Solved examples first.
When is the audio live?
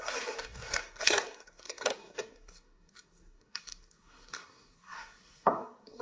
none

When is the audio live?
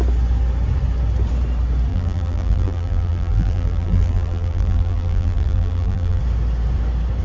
0.0-1.9; 6.2-7.2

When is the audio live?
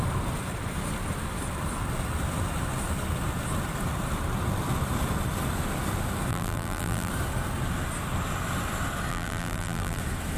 0.0-6.3; 7.1-9.1; 10.0-10.4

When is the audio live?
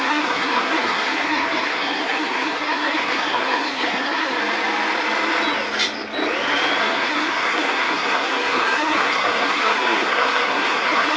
4.4-6.8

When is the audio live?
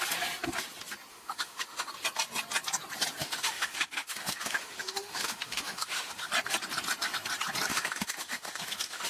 0.0-1.1; 1.9-3.2; 6.3-7.7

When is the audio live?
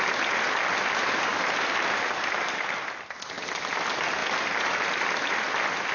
0.0-1.3; 2.7-4.2; 5.3-5.9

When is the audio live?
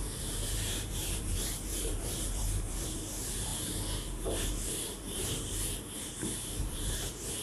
3.5-4.3